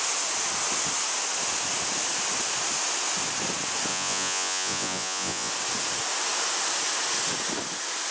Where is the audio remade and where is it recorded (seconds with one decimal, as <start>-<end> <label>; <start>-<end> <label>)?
0.0-3.9 recorded; 3.9-5.5 remade; 5.5-8.1 recorded